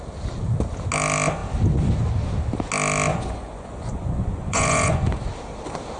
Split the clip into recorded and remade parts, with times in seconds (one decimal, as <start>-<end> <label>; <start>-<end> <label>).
0.0-3.1 recorded; 3.1-5.2 remade; 5.2-6.0 recorded